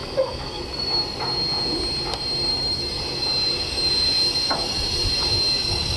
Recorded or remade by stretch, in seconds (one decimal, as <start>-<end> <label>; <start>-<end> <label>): 0.0-0.6 remade; 0.6-2.5 recorded; 2.5-3.0 remade; 3.0-6.0 recorded

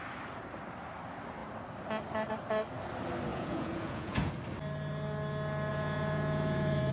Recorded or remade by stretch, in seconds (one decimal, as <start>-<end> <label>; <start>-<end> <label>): 0.0-3.3 recorded; 3.3-4.3 remade; 4.3-5.7 recorded; 5.7-6.9 remade

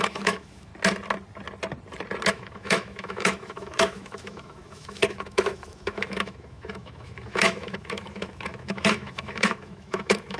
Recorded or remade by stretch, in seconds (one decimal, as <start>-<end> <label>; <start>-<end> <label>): 0.0-0.7 remade; 0.7-2.3 recorded; 2.3-10.4 remade

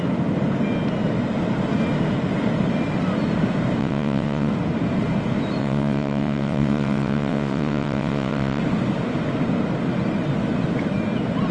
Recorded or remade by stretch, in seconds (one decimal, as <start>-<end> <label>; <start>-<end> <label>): 0.0-3.8 recorded; 3.8-4.5 remade; 4.5-5.6 recorded; 5.6-8.6 remade; 8.6-11.5 recorded

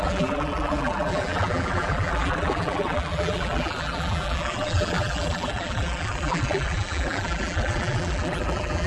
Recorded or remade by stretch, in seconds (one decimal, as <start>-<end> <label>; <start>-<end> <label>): 0.0-8.9 remade

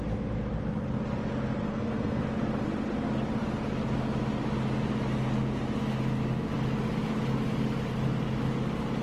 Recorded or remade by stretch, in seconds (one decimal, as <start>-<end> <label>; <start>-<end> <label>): 0.0-1.7 recorded; 1.7-2.2 remade; 2.2-9.0 recorded

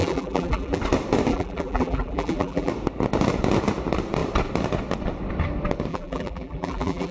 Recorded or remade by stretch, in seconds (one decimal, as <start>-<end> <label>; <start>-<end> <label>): 0.0-0.8 remade; 0.8-1.3 recorded; 1.3-2.7 remade; 2.7-5.9 recorded; 5.9-7.1 remade